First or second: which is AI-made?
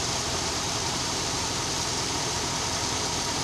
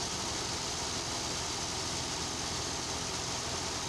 first